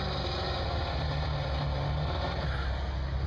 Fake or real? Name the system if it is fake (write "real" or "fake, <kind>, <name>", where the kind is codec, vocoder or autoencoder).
real